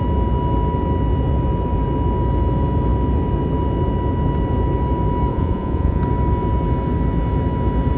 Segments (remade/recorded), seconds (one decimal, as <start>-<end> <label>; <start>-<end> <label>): 0.0-5.3 recorded; 5.3-6.0 remade; 6.0-8.0 recorded